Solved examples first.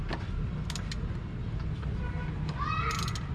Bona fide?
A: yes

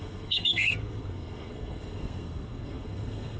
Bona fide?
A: no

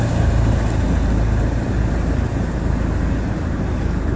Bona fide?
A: yes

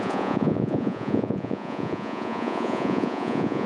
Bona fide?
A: no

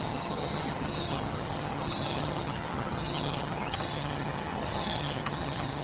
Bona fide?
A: no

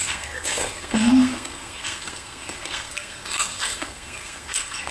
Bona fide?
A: no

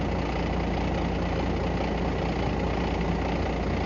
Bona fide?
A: yes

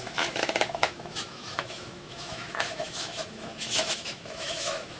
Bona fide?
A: no